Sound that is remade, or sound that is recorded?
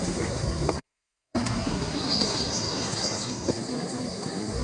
remade